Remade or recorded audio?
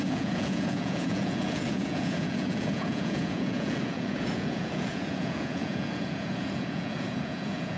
remade